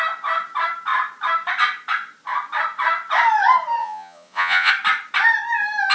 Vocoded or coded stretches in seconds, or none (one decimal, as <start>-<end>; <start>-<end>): 3.8-4.7